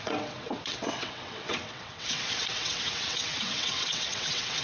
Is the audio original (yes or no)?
no